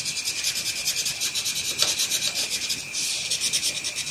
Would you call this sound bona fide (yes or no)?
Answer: yes